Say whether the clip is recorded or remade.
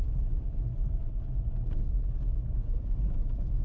recorded